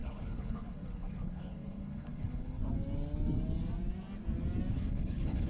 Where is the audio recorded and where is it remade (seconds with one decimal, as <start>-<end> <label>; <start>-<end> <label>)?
0.0-2.6 remade; 2.6-4.7 recorded; 4.7-5.5 remade